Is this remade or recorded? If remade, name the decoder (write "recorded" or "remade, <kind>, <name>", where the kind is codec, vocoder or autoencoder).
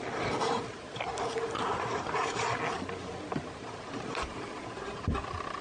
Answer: recorded